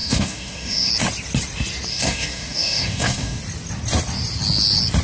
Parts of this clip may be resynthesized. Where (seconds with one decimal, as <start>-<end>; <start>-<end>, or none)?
0.0-0.9; 1.9-3.4